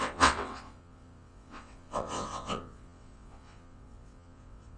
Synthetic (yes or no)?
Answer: yes